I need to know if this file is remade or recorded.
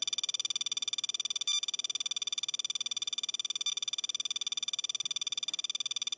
recorded